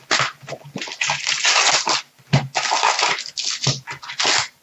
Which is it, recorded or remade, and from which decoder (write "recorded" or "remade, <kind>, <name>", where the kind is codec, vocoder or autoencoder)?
recorded